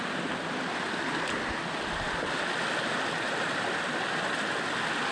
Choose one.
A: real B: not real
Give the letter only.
A